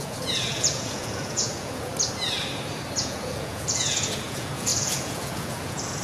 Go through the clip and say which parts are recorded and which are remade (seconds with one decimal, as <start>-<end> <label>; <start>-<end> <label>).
0.0-1.9 remade; 1.9-3.0 recorded; 3.0-6.0 remade